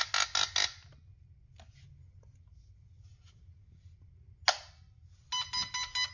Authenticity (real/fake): real